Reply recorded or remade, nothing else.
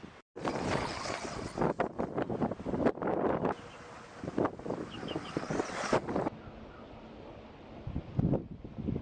recorded